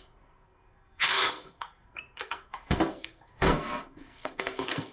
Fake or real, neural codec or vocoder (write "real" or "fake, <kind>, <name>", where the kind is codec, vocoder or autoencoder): fake, codec, SNAC